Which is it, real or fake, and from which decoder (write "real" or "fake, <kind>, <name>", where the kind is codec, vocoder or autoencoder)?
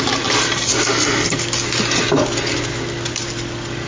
real